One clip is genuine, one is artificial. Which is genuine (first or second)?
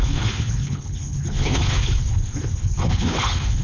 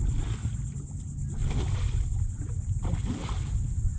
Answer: second